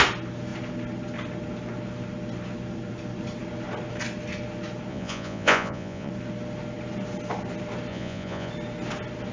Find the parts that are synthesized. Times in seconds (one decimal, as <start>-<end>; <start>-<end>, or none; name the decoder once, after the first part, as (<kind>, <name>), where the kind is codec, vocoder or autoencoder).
4.9-6.1 (vocoder, Vocos); 7.9-8.5